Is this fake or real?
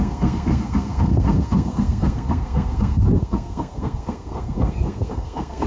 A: fake